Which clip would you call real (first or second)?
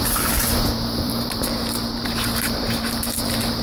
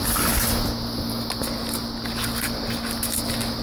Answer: second